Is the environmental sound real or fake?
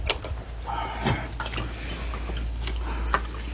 real